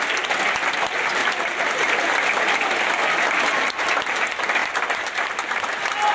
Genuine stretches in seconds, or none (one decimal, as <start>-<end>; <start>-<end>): 0.0-1.2; 1.9-4.6; 5.6-6.1